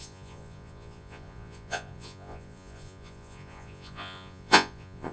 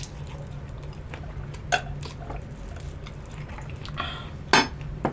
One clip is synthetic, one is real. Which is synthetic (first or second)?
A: first